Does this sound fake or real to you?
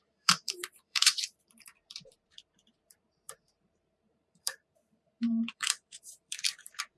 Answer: fake